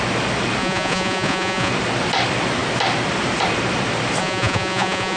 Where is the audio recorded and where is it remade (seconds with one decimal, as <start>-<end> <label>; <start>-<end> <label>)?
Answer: 0.0-0.6 recorded; 0.6-1.7 remade; 1.7-4.2 recorded; 4.2-5.2 remade